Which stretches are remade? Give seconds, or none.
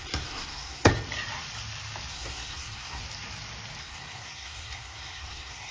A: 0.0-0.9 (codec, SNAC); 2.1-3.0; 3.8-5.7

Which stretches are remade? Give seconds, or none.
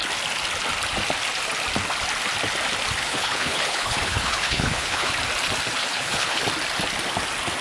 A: 3.0-5.1 (codec, HILCodec); 5.8-6.4